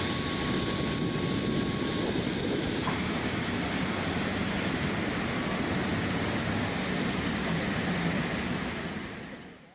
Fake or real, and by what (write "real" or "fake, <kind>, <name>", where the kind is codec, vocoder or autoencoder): fake, vocoder, BigVGAN v2